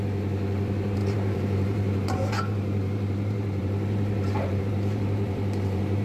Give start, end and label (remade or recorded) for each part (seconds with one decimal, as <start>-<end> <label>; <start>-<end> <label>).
0.0-6.0 remade